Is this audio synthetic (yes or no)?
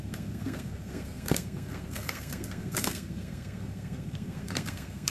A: yes